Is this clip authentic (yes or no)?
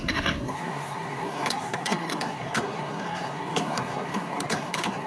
no